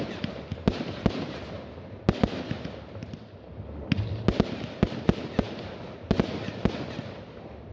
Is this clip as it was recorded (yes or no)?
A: yes